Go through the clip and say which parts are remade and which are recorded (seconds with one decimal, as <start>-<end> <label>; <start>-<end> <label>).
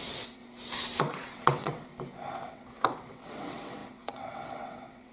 0.0-0.4 remade; 0.4-1.0 recorded; 1.0-1.9 remade; 1.9-2.5 recorded; 2.5-5.1 remade